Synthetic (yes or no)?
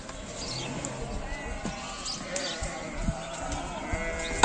no